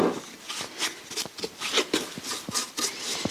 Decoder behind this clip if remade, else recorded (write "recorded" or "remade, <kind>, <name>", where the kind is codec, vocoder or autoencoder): recorded